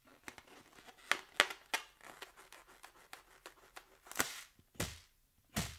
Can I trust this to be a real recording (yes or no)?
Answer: yes